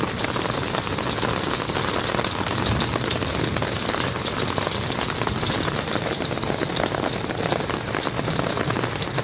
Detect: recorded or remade recorded